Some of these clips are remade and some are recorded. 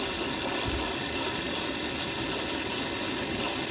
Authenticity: recorded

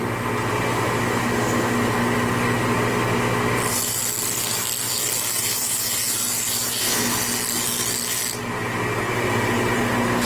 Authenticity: recorded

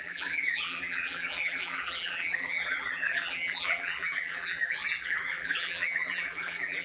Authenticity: remade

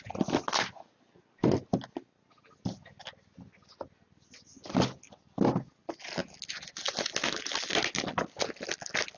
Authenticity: recorded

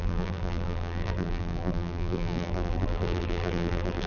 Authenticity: remade